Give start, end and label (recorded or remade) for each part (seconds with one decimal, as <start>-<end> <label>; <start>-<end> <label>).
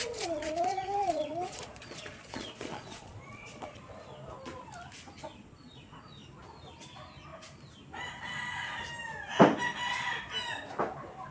0.0-3.8 remade; 3.8-5.3 recorded; 5.3-6.1 remade; 6.1-11.3 recorded